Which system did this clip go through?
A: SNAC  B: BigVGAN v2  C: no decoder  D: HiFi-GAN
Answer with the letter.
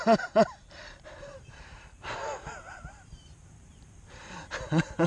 B